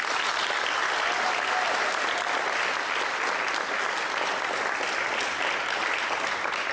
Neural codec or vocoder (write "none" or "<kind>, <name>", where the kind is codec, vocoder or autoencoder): none